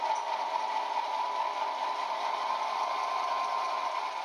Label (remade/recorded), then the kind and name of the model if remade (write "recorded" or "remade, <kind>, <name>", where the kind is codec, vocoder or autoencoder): recorded